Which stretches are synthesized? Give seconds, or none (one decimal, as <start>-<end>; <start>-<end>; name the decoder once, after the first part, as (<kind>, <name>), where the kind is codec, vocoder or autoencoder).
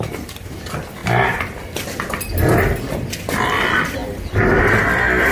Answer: 1.0-1.8 (vocoder, BigVGAN v2); 4.0-4.6